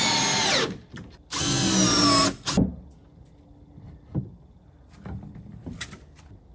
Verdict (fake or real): real